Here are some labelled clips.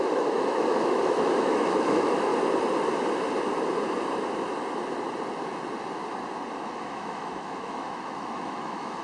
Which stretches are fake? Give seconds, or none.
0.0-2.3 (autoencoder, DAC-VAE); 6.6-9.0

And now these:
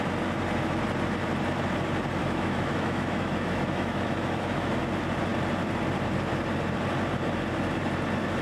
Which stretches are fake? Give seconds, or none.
2.2-4.8 (autoencoder, DAC-VAE)

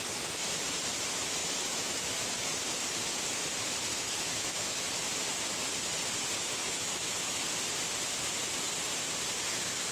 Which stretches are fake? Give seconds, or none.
1.4-2.5 (autoencoder, DAC-VAE); 3.9-4.9; 6.6-7.4

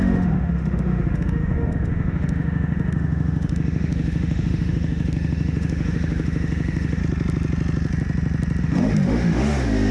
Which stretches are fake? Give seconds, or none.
0.0-7.0 (autoencoder, DAC-VAE); 8.6-9.9

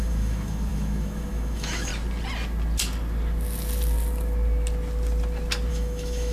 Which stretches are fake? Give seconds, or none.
0.0-1.9 (autoencoder, DAC-VAE); 5.7-6.3

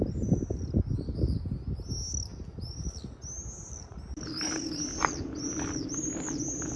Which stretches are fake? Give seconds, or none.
none

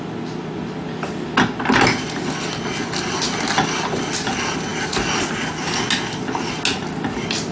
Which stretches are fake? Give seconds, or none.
none

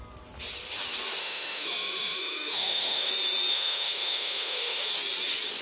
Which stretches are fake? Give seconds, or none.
1.2-3.1 (autoencoder, DAC-VAE); 3.5-4.9